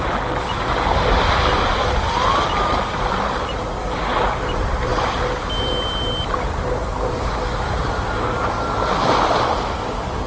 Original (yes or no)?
yes